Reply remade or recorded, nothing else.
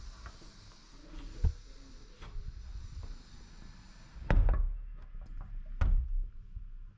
recorded